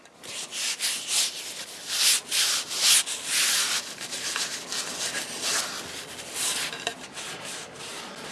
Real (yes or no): yes